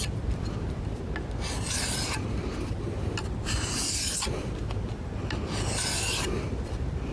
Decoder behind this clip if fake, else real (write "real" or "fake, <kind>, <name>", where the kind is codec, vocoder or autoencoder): real